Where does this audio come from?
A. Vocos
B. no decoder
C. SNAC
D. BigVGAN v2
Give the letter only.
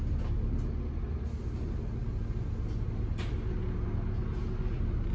B